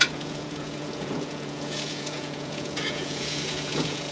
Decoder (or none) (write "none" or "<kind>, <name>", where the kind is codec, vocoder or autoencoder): vocoder, Vocos